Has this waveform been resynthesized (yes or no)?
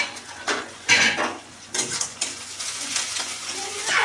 yes